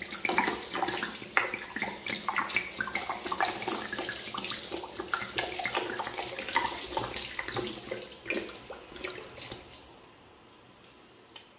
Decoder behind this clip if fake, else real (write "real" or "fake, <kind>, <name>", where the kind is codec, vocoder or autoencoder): real